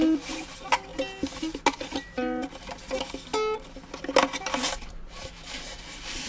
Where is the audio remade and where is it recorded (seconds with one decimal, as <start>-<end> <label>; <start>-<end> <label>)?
0.0-6.3 recorded